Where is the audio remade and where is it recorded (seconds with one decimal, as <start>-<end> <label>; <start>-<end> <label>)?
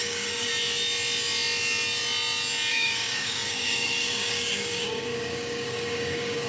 0.0-0.5 remade; 0.5-2.7 recorded; 2.7-6.5 remade